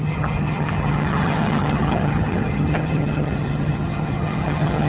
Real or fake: fake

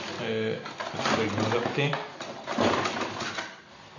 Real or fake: real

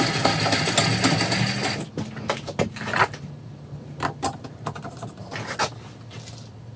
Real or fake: real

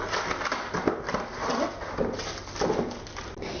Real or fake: real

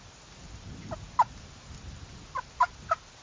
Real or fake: real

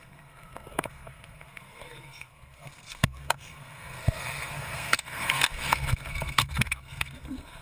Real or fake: fake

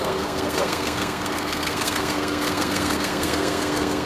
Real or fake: fake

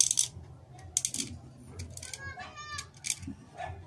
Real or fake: real